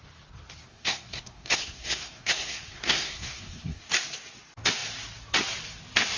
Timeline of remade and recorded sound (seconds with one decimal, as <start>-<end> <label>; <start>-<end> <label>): 0.0-0.7 recorded; 0.7-3.9 remade; 3.9-6.2 recorded